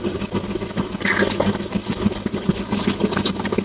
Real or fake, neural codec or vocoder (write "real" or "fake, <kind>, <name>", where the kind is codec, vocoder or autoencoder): fake, vocoder, BigVGAN v2